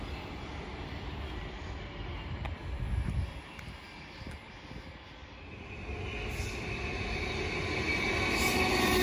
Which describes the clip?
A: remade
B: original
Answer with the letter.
B